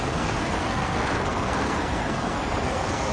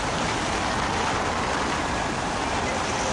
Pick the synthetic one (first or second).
first